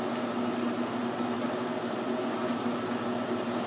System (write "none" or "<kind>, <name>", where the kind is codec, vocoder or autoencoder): none